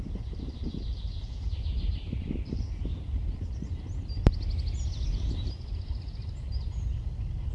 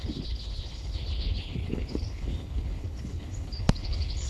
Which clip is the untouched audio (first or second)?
first